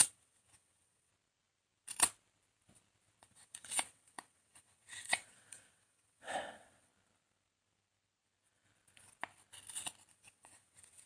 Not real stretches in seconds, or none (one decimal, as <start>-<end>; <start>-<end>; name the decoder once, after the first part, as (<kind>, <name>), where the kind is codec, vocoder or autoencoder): 0.0-1.1 (vocoder, WaveNeXt); 3.2-6.9; 10.1-11.1